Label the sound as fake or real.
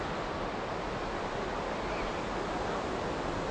real